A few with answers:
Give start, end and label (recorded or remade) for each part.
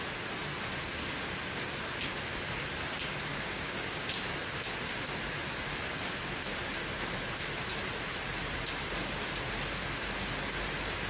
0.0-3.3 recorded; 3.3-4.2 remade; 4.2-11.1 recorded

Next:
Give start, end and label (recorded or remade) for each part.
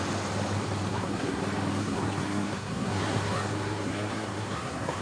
0.0-0.9 recorded; 0.9-1.4 remade; 1.4-1.8 recorded; 1.8-5.0 remade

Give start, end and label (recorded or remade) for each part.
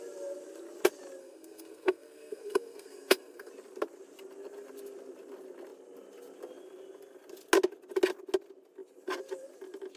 0.0-1.2 recorded; 1.2-3.5 remade; 3.5-10.0 recorded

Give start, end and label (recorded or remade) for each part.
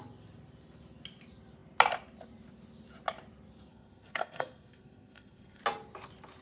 0.0-3.7 recorded; 3.7-5.6 remade; 5.6-6.4 recorded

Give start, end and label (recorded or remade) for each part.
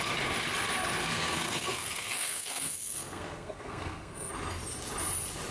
0.0-1.0 recorded; 1.0-4.3 remade; 4.3-5.5 recorded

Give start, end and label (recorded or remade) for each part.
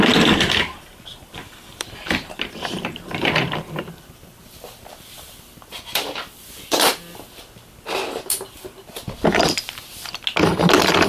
0.0-1.7 recorded; 1.7-6.9 remade; 6.9-11.1 recorded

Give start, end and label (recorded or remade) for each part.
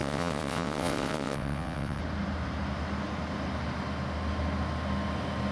0.0-2.0 remade; 2.0-5.5 recorded